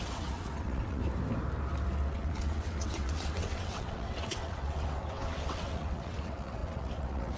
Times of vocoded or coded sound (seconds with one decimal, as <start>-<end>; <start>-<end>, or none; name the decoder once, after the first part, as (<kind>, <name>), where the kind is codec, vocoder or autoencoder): 0.0-1.0 (vocoder, WaveNeXt); 2.1-7.4